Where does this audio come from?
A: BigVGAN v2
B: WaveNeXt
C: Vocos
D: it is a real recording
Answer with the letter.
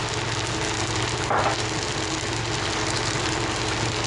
D